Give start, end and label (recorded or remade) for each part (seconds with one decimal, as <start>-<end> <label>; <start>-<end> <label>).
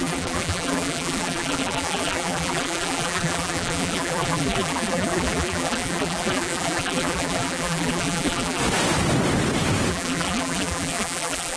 0.0-8.6 remade; 8.6-9.9 recorded; 9.9-11.6 remade